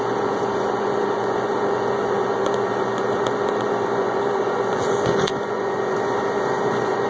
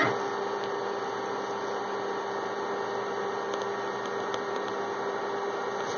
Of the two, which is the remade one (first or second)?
first